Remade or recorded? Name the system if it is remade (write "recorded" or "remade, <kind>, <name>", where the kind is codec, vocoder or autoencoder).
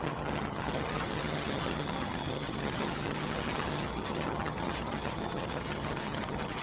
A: remade, vocoder, HiFi-GAN